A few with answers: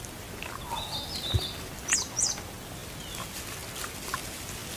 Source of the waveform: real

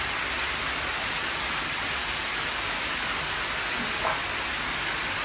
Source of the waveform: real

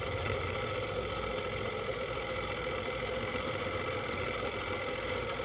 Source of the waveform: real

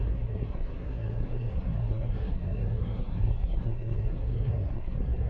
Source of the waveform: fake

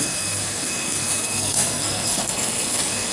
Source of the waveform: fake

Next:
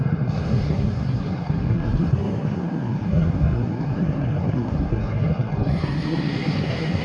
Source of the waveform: fake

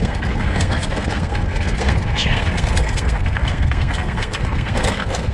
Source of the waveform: fake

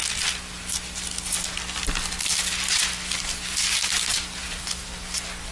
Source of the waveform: real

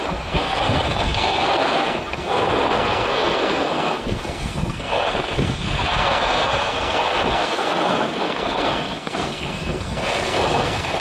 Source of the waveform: fake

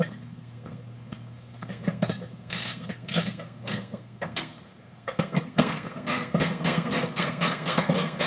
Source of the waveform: fake